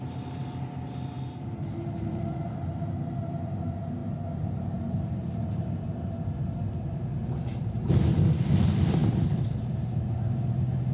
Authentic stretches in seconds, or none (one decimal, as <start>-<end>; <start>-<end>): 0.4-2.0